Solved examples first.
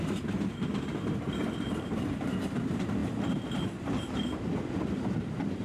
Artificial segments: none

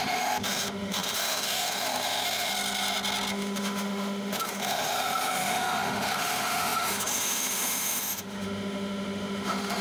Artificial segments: 0.0-2.5; 3.3-9.8

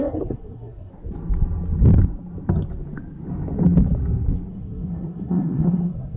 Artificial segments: 0.0-0.9; 4.5-6.2

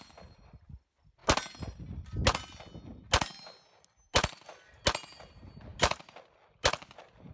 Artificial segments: 5.7-6.2

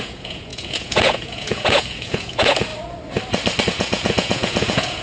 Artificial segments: 0.0-2.7; 3.7-5.0

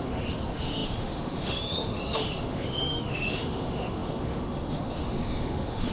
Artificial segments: 0.0-5.9

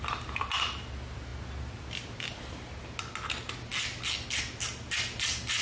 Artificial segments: none

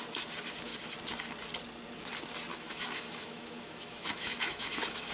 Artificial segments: 2.5-5.1